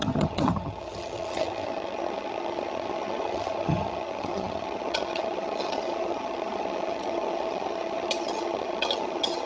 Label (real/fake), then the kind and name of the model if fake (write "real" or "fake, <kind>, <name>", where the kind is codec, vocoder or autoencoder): fake, vocoder, HiFi-GAN